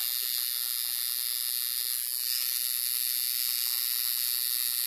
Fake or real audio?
real